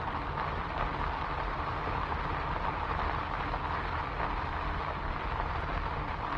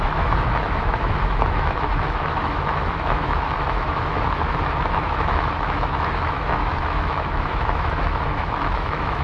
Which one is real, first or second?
first